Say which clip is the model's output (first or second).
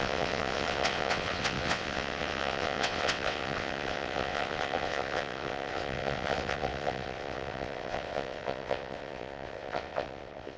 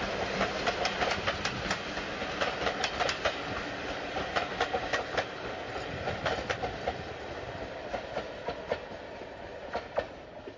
first